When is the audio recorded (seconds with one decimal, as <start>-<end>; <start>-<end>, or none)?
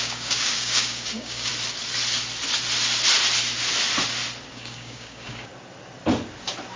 1.5-4.5; 5.5-6.8